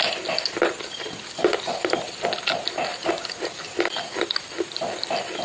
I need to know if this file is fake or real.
real